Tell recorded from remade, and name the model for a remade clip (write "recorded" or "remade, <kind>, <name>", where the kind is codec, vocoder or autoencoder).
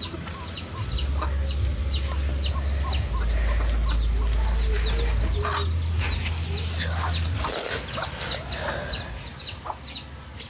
recorded